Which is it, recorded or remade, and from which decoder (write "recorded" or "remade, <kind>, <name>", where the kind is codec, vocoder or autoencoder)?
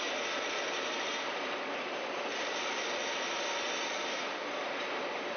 recorded